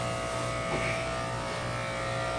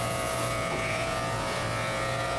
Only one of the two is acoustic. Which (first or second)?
first